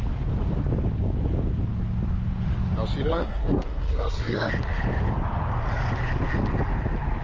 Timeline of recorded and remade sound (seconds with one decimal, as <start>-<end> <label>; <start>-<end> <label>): 0.0-3.1 recorded; 3.1-4.5 remade; 4.5-7.2 recorded